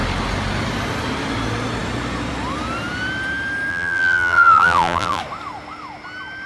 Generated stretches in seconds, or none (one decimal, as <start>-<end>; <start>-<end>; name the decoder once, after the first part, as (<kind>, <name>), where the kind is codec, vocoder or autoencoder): 3.7-5.2 (vocoder, BigVGAN v2)